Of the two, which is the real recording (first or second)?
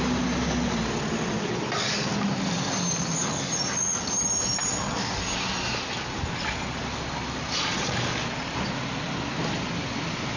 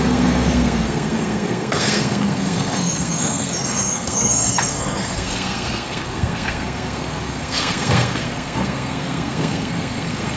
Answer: first